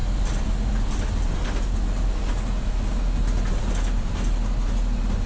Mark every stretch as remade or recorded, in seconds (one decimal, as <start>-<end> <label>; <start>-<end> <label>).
0.0-5.3 recorded

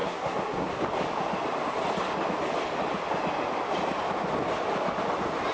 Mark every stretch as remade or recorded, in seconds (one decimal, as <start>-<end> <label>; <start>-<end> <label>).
0.0-0.8 remade; 0.8-5.5 recorded